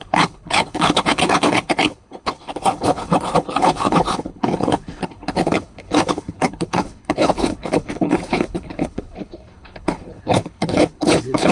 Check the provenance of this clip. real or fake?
fake